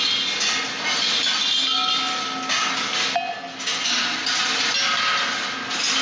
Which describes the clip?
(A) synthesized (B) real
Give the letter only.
B